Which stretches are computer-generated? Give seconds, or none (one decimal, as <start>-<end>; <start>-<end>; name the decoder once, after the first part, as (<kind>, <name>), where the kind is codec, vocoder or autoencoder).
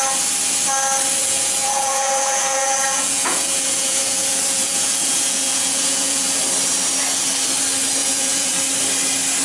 1.2-6.4 (vocoder, Vocos); 8.0-8.5